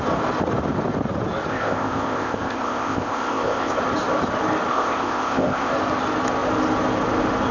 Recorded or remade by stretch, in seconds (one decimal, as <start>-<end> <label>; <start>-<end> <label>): 0.0-1.5 recorded; 1.5-3.8 remade; 3.8-4.7 recorded; 4.7-5.7 remade; 5.7-7.5 recorded